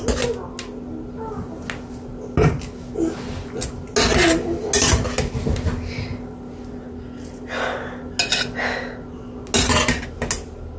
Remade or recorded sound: recorded